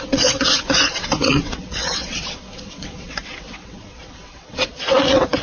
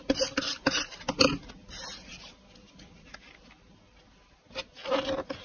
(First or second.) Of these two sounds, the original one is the second